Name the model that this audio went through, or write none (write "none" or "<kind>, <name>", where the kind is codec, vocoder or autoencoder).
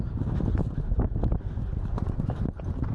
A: none